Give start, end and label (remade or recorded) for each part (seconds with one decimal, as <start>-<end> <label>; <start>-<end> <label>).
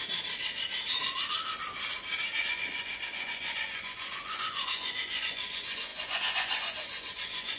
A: 0.0-2.4 recorded; 2.4-7.6 remade